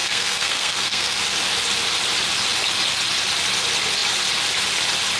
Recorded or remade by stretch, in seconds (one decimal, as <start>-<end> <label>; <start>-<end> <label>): 0.0-1.2 remade; 1.2-5.2 recorded

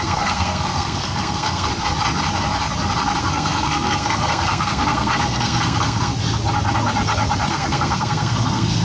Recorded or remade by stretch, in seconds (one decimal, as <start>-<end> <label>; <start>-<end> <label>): 0.0-1.7 remade; 1.7-3.2 recorded; 3.2-6.1 remade; 6.1-7.5 recorded; 7.5-8.8 remade

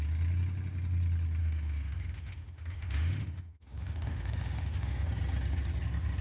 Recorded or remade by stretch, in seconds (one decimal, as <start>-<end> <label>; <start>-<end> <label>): 0.0-1.4 recorded; 1.4-5.1 remade; 5.1-6.2 recorded